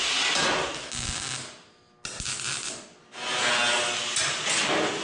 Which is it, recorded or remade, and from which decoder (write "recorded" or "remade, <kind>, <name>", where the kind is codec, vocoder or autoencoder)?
recorded